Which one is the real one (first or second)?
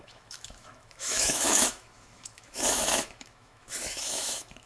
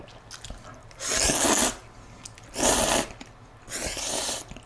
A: second